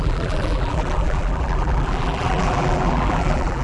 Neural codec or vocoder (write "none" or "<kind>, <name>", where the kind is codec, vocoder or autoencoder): vocoder, BigVGAN v2